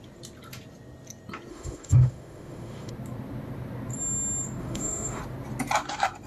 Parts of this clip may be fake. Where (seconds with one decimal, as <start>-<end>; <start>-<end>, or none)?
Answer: 1.5-2.9; 4.6-5.2